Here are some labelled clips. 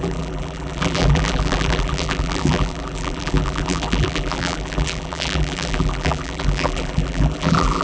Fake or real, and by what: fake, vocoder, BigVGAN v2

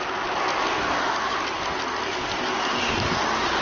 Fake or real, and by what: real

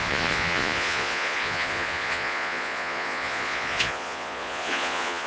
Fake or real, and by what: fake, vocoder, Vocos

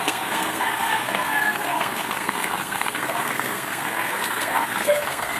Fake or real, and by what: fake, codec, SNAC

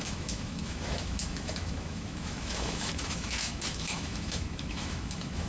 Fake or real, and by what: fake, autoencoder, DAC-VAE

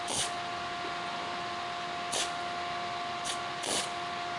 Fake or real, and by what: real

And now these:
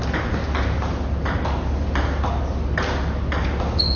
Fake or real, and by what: real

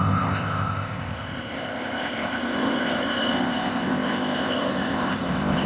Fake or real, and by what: fake, codec, ZipCodec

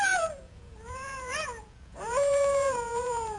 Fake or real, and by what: fake, vocoder, Vocos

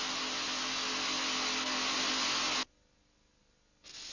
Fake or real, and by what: real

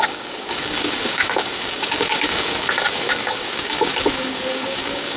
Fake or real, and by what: fake, codec, DAC